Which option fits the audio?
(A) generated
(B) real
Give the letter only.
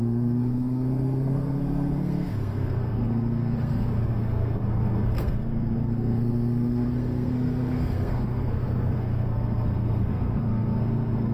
A